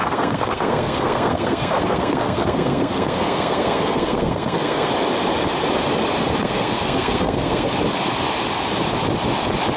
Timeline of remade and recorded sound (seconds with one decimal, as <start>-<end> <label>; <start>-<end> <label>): 0.0-4.9 remade; 4.9-6.4 recorded; 6.4-7.7 remade; 7.7-9.8 recorded